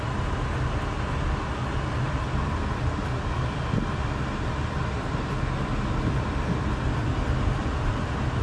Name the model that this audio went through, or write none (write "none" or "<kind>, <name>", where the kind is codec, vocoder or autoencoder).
none